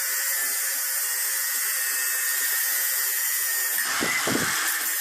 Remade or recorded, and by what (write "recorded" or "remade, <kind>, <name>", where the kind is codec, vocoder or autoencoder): remade, vocoder, BigVGAN v2